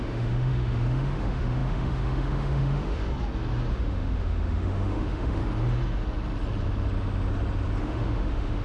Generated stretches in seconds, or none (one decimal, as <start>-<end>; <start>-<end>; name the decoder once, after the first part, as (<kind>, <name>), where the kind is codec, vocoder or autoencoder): 0.0-3.0 (autoencoder, DAC-VAE); 3.7-5.4; 7.8-8.6